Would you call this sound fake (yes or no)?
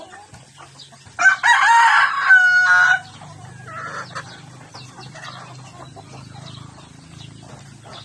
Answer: no